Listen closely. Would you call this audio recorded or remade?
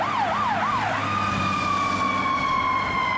recorded